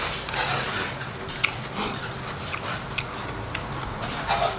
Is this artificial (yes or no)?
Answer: no